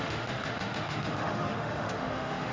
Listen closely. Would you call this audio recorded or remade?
remade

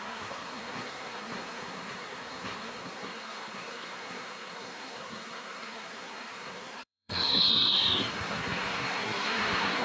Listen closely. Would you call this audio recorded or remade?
remade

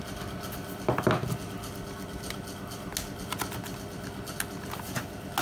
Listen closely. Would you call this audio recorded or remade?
recorded